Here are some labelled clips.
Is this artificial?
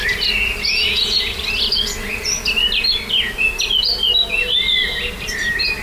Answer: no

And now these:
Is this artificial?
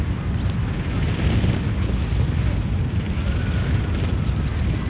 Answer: no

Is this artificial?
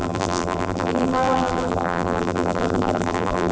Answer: yes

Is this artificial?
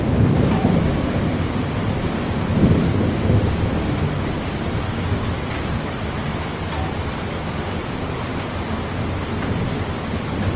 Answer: yes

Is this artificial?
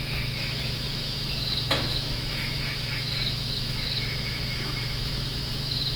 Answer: yes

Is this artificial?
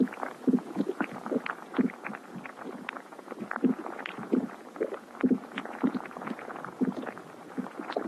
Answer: yes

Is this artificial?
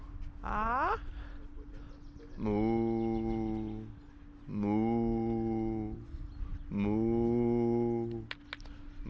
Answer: no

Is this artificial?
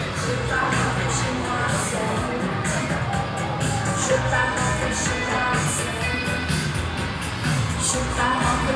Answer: no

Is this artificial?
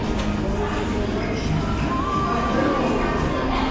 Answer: no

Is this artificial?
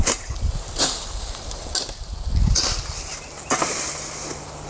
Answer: no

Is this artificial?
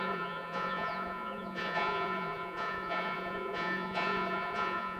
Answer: yes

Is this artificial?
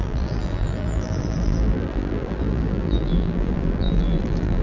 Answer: yes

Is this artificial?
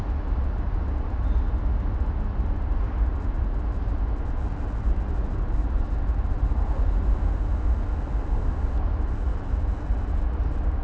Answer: no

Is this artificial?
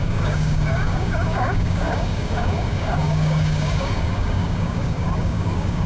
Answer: yes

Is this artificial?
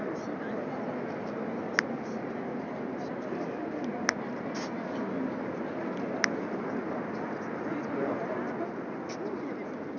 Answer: no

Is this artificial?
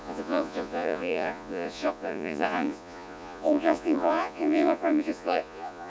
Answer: yes